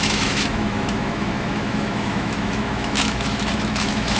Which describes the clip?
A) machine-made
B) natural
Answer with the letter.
A